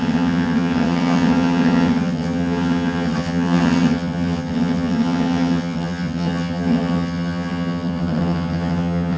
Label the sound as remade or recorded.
remade